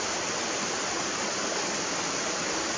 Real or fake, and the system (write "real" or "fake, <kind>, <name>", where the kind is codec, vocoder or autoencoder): real